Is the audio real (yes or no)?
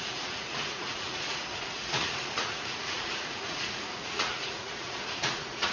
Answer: no